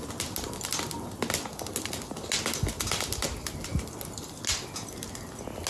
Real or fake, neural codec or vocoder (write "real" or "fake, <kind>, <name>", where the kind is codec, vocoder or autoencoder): real